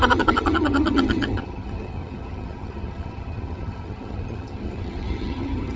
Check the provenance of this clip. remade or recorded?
remade